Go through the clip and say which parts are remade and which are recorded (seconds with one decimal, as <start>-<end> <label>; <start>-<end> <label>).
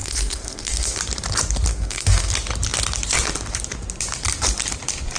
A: 0.0-1.0 remade; 1.0-1.7 recorded; 1.7-2.3 remade; 2.3-5.2 recorded